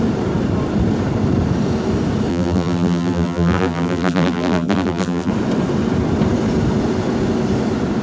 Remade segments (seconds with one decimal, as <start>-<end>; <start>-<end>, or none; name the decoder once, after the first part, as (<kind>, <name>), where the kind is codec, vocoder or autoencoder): 2.3-5.3 (vocoder, BigVGAN v2)